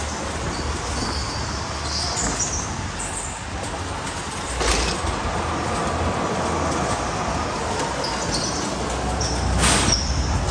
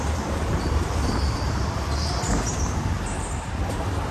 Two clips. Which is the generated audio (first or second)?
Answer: second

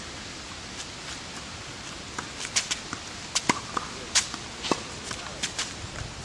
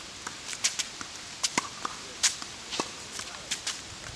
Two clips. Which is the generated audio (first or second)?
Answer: second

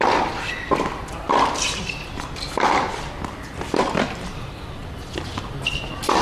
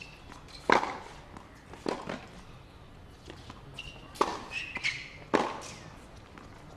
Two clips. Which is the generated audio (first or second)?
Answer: first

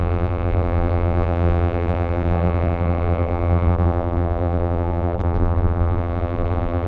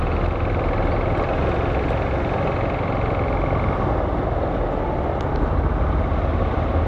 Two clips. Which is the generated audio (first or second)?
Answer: first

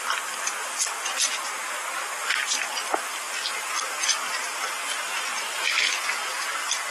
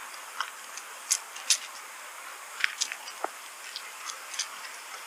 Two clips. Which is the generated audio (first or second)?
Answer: first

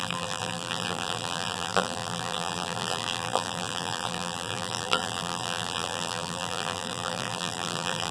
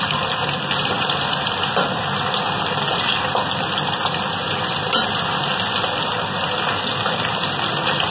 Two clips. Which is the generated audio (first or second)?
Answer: first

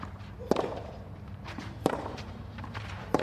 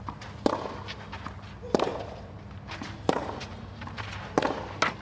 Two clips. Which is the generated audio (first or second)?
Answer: first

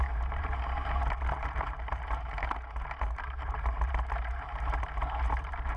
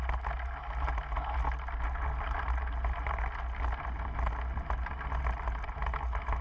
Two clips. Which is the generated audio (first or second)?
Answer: first